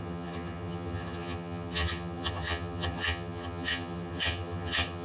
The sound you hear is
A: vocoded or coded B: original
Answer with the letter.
A